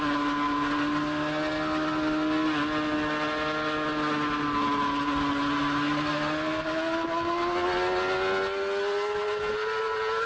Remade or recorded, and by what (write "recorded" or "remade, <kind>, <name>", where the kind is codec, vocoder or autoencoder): recorded